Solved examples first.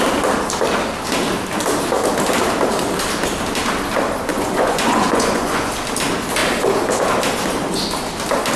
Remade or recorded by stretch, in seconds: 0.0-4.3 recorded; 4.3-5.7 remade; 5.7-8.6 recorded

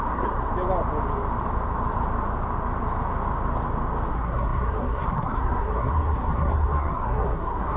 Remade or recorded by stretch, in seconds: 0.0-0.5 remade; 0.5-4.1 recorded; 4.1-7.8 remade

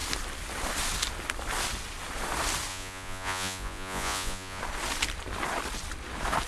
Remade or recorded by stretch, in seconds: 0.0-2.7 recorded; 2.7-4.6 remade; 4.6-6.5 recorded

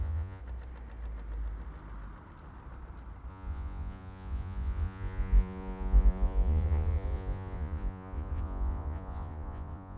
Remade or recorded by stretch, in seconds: 0.0-0.4 remade; 0.4-3.3 recorded; 3.3-10.0 remade

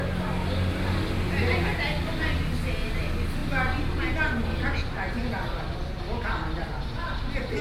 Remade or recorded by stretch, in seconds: 0.0-7.6 recorded

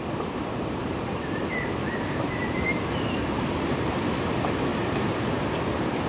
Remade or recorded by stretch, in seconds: 0.0-0.8 recorded; 0.8-3.5 remade; 3.5-4.7 recorded; 4.7-5.5 remade; 5.5-6.1 recorded

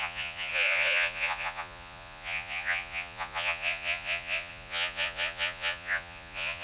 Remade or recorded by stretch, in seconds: 0.0-6.6 remade

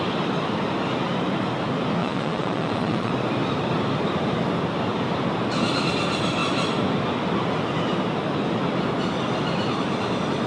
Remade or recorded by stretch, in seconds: 0.0-2.0 recorded; 2.0-3.1 remade; 3.1-10.5 recorded